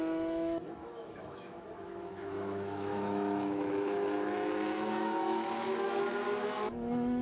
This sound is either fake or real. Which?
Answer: fake